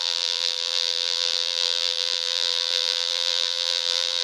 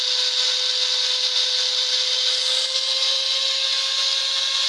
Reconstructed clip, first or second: first